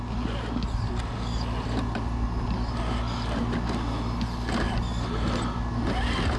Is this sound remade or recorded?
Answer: recorded